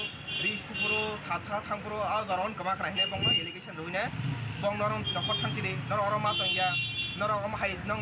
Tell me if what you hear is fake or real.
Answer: real